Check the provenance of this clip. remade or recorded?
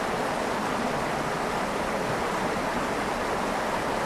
recorded